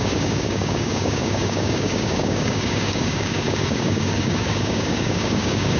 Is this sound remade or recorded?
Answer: remade